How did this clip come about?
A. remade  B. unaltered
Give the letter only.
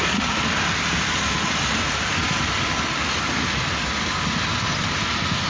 B